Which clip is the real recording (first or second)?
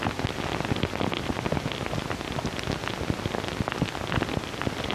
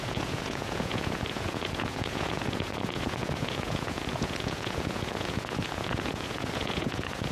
first